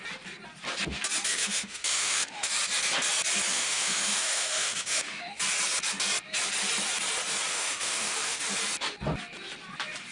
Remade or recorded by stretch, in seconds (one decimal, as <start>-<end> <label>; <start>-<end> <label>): 0.0-1.3 recorded; 1.3-2.5 remade; 2.5-3.5 recorded; 3.5-5.4 remade; 5.4-7.5 recorded; 7.5-8.4 remade; 8.4-10.1 recorded